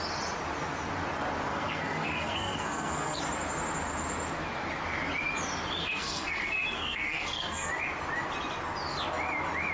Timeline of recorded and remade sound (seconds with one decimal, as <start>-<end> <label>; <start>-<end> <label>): 0.0-1.5 recorded; 1.5-3.2 remade; 3.2-5.8 recorded; 5.8-7.7 remade; 7.7-9.7 recorded